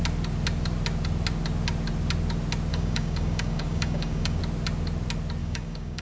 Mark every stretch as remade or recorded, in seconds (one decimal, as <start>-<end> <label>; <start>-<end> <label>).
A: 0.0-2.7 recorded; 2.7-4.4 remade; 4.4-5.4 recorded; 5.4-6.0 remade